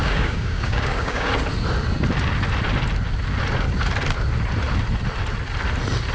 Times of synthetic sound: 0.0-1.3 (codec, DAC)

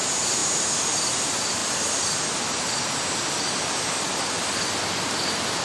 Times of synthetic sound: 0.0-1.6 (vocoder, BigVGAN v2); 5.0-5.6

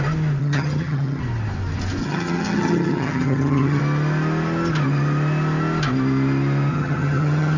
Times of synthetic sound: 0.4-1.2 (vocoder, HiFi-GAN); 2.0-3.8; 6.7-7.6

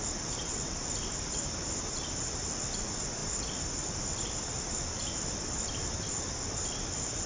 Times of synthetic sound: 0.0-7.3 (vocoder, BigVGAN v2)

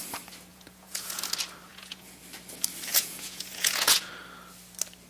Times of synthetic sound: 0.5-1.2 (vocoder, Vocos); 1.7-2.2; 2.9-4.1

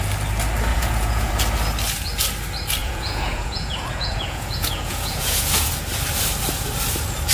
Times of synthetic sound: 0.7-1.3 (vocoder, Vocos); 2.8-5.7